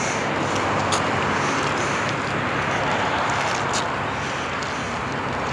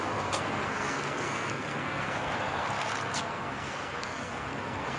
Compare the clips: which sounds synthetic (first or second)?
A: second